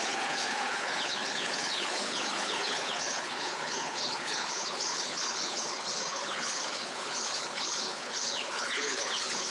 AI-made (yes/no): yes